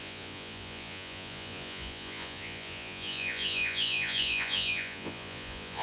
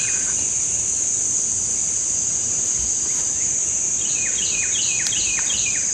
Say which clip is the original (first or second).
second